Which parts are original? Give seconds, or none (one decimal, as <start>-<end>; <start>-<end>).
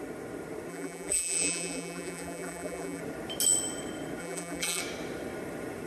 0.0-0.7; 3.0-4.2; 4.8-5.9